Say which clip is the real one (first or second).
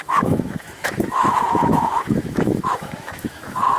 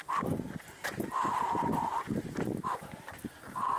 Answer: second